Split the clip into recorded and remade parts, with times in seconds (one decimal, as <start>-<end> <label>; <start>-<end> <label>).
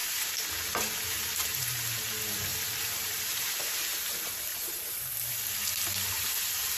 0.0-1.7 remade; 1.7-2.5 recorded; 2.5-3.2 remade; 3.2-4.5 recorded; 4.5-5.3 remade; 5.3-6.8 recorded